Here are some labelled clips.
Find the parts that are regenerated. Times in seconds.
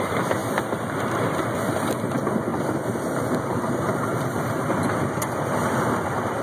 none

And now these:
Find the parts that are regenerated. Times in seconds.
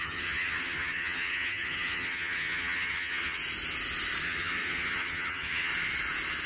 0.0-3.4 (vocoder, HiFi-GAN); 4.2-5.7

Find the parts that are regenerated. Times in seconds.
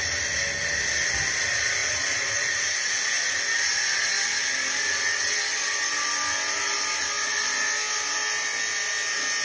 1.8-3.3 (vocoder, Vocos)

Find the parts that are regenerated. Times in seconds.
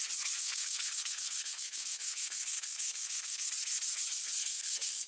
0.4-3.5 (codec, SNAC); 4.4-5.1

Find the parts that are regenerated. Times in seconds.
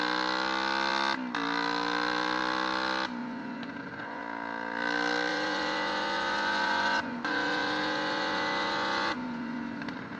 3.2-4.2 (vocoder, Vocos); 5.3-10.2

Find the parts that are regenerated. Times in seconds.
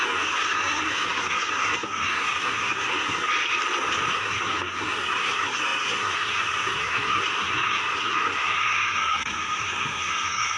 0.0-3.3 (codec, SNAC); 4.1-10.6